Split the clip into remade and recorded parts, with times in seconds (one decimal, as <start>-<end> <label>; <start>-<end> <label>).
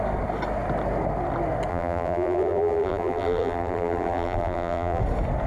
0.0-1.7 recorded; 1.7-5.0 remade; 5.0-5.5 recorded